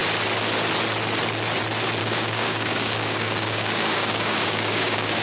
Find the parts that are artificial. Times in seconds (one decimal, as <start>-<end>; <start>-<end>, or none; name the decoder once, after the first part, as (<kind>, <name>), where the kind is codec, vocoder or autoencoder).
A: 2.0-5.2 (codec, DAC)